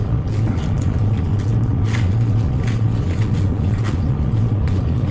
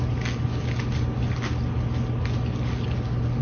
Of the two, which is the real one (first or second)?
second